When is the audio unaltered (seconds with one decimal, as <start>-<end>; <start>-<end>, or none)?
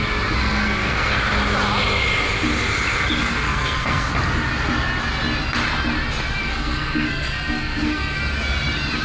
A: 0.0-0.4; 1.2-3.2; 4.1-6.4; 8.2-9.0